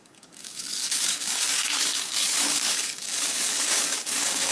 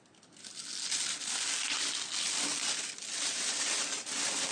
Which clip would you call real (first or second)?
second